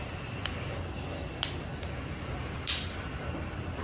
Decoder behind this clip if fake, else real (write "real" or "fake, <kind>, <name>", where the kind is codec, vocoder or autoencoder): real